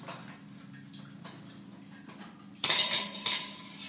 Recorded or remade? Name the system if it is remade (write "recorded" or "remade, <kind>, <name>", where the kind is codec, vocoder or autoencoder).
recorded